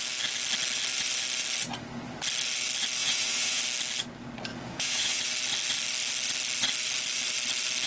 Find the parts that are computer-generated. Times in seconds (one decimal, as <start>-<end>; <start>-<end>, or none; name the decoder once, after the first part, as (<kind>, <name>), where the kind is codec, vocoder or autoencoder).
3.0-3.6 (vocoder, Vocos); 4.5-5.2

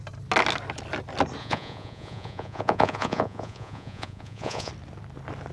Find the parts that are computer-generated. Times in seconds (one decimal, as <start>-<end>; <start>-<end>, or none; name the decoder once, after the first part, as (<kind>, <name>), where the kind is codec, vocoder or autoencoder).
1.4-4.7 (vocoder, Vocos)

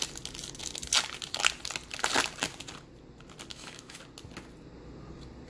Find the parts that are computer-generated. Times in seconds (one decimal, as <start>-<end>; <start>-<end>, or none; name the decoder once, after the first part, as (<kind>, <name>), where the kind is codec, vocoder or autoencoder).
3.5-4.0 (autoencoder, DAC-VAE)

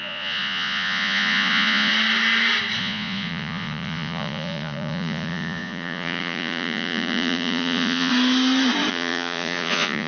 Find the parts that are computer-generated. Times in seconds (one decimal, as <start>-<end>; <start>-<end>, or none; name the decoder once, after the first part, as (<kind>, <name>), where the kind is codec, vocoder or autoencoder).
0.0-1.9 (vocoder, Vocos); 2.8-8.1; 8.9-10.1

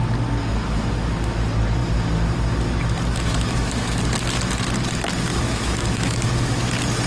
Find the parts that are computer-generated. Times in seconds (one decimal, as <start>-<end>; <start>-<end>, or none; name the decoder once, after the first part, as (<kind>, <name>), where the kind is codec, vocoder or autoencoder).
3.1-4.0 (autoencoder, DAC-VAE); 5.3-6.6